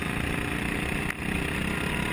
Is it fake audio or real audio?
real